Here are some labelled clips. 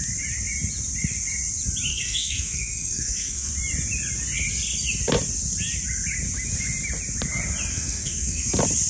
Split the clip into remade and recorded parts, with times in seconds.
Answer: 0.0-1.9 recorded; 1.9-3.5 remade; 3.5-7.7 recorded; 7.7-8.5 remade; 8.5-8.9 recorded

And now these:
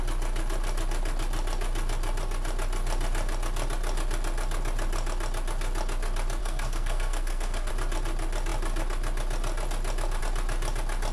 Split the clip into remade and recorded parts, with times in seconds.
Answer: 0.0-6.4 recorded; 6.4-7.7 remade; 7.7-11.1 recorded

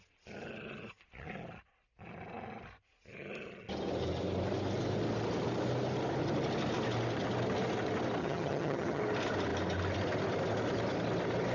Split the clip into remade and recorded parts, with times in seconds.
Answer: 0.0-8.2 recorded; 8.2-9.0 remade; 9.0-11.5 recorded

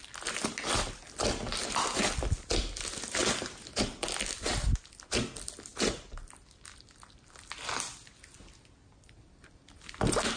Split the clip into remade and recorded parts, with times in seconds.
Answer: 0.0-10.4 recorded

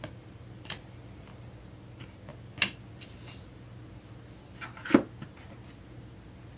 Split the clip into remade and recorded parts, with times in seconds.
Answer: 0.0-6.6 recorded

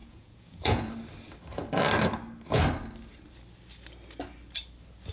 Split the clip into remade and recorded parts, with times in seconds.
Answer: 0.0-0.9 remade; 0.9-5.1 recorded

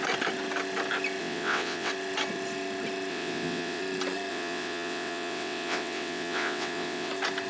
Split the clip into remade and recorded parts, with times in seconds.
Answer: 0.0-1.2 recorded; 1.2-1.9 remade; 1.9-3.1 recorded; 3.1-3.8 remade; 3.8-4.3 recorded; 4.3-7.1 remade; 7.1-7.5 recorded

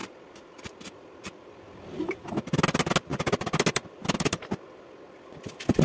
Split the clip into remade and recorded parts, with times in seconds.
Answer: 0.0-5.8 recorded